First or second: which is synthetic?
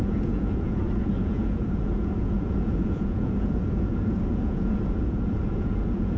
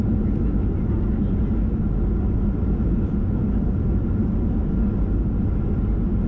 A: first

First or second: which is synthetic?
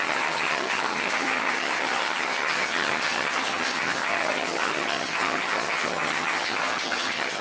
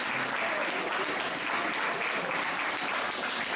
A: first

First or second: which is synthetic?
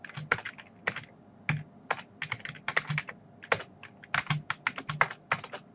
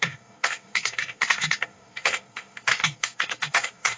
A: second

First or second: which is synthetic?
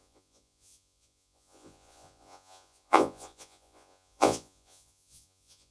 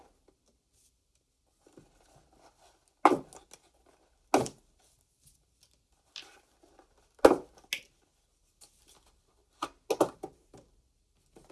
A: first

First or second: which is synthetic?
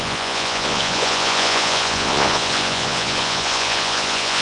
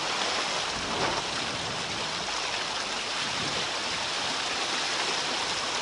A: first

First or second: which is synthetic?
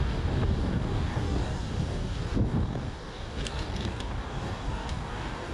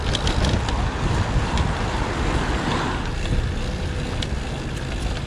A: first